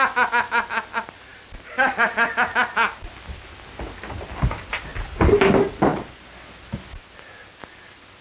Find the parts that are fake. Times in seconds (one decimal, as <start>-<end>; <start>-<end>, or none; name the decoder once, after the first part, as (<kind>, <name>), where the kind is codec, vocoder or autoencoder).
none